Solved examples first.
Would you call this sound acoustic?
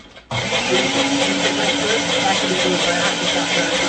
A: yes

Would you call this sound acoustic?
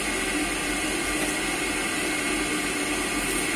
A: yes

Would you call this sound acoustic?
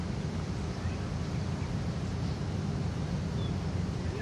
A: yes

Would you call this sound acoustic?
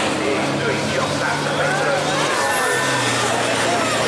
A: yes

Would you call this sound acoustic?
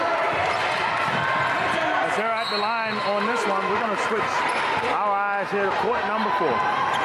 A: yes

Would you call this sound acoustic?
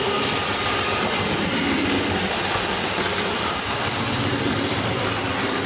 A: no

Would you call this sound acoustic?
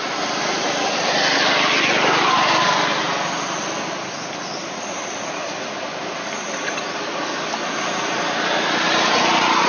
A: yes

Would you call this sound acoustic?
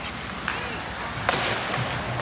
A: yes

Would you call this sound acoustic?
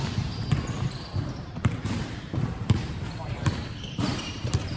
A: no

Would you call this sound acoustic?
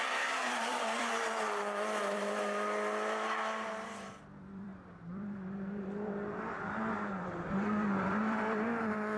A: no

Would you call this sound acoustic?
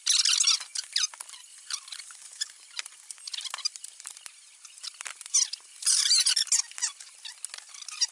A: yes